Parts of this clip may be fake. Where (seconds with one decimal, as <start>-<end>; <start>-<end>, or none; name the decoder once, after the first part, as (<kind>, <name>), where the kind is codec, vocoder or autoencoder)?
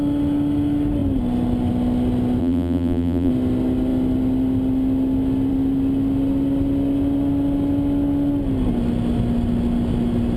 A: 2.4-3.3 (vocoder, BigVGAN v2)